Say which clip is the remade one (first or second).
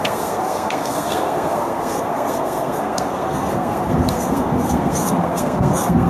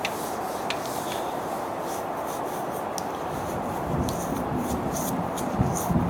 first